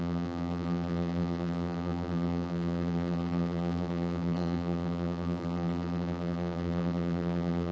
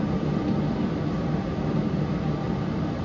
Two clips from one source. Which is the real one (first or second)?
second